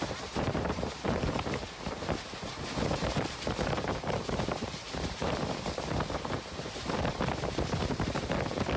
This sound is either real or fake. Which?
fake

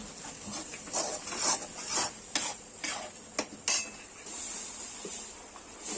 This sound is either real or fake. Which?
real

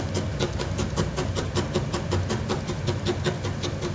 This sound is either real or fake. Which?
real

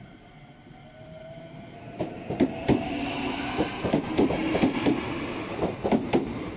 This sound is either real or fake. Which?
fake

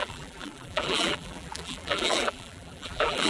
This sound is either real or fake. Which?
fake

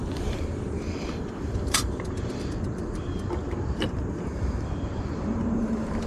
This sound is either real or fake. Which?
fake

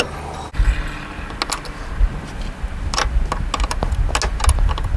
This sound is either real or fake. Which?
real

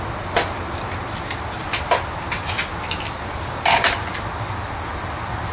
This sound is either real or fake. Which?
real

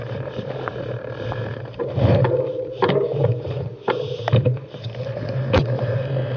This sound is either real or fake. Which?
fake